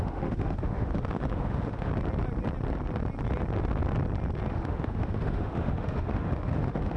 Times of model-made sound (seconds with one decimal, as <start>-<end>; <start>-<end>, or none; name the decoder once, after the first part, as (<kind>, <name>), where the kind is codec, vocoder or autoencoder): 0.0-1.9 (autoencoder, DAC-VAE); 4.5-7.0